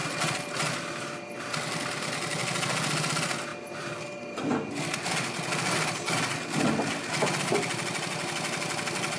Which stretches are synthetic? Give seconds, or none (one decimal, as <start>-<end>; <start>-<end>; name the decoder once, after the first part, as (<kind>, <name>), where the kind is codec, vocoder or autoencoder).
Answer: none